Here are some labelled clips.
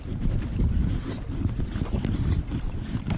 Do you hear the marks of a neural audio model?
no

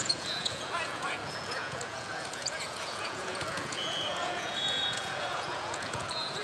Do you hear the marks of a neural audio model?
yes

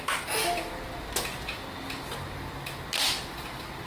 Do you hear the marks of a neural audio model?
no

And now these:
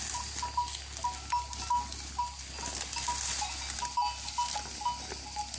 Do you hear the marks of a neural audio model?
no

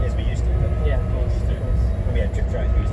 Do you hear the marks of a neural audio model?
no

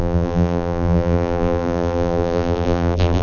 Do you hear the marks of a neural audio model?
yes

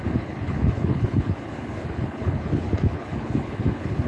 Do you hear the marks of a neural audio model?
yes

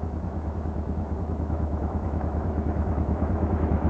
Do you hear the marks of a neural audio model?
yes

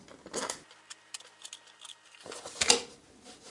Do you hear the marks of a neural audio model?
no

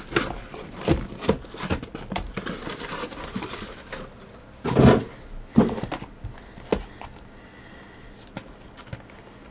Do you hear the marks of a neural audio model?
no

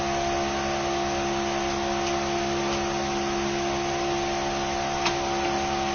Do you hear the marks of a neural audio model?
no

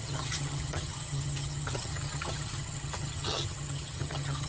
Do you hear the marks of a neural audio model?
yes